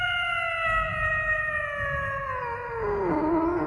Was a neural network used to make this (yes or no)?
no